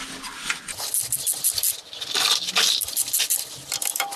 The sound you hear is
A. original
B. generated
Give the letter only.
A